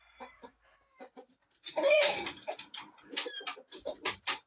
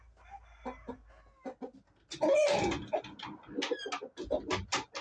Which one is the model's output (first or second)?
first